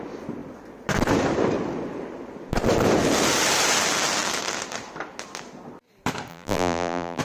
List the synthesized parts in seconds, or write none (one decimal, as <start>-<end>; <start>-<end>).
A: 6.3-7.2